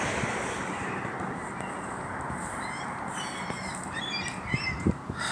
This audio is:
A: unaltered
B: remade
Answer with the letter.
B